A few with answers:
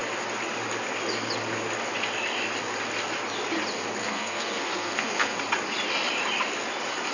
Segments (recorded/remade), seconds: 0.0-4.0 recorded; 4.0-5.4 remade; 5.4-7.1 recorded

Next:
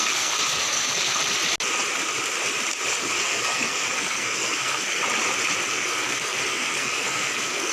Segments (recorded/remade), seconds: 0.0-1.2 remade; 1.2-3.0 recorded; 3.0-5.0 remade; 5.0-5.7 recorded; 5.7-7.7 remade

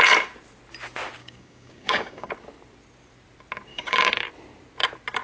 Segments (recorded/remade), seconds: 0.0-1.2 recorded; 1.2-2.3 remade; 2.3-3.7 recorded; 3.7-4.3 remade; 4.3-5.2 recorded

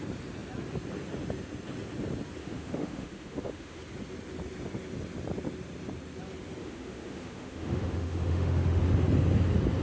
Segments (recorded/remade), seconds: 0.0-2.4 recorded; 2.4-3.8 remade; 3.8-6.6 recorded; 6.6-8.8 remade; 8.8-9.8 recorded

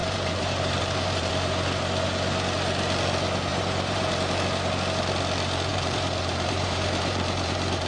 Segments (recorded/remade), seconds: 0.0-1.3 remade; 1.3-3.5 recorded; 3.5-4.1 remade; 4.1-5.7 recorded; 5.7-7.9 remade

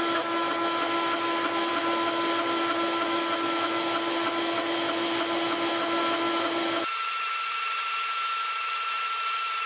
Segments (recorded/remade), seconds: 0.0-9.7 recorded

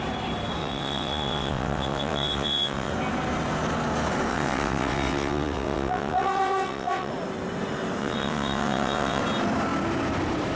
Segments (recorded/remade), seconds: 0.0-0.6 recorded; 0.6-2.9 remade; 2.9-4.3 recorded; 4.3-7.1 remade; 7.1-8.0 recorded; 8.0-9.2 remade; 9.2-10.6 recorded